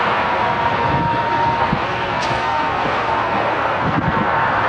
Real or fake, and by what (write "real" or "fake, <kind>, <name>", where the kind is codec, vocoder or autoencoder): fake, codec, SNAC